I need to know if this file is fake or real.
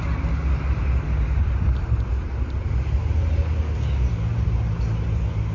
real